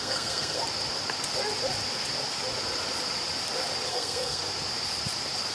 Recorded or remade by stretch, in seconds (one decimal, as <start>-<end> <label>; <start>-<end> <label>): 0.0-0.6 remade; 0.6-3.9 recorded; 3.9-4.4 remade; 4.4-5.5 recorded